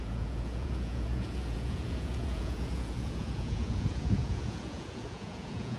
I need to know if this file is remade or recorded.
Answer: remade